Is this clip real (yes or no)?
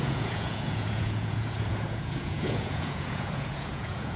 no